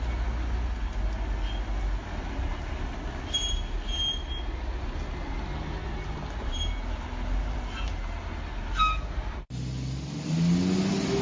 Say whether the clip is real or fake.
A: real